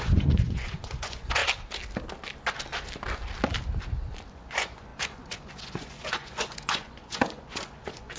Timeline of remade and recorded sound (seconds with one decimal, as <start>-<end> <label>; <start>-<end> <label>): 0.0-1.4 remade; 1.4-4.3 recorded; 4.3-8.2 remade